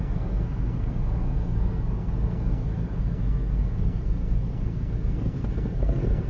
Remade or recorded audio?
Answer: remade